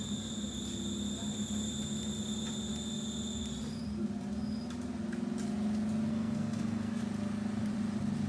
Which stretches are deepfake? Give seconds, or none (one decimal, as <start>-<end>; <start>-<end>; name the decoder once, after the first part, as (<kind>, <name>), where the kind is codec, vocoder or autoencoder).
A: 6.1-7.0 (codec, SNAC)